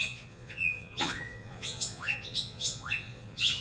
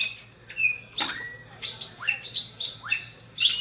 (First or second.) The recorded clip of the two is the second